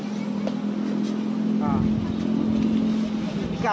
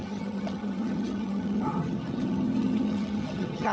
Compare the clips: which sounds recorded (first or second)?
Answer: first